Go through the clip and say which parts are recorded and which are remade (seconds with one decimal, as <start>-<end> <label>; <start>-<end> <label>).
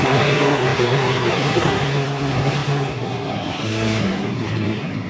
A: 0.0-5.1 remade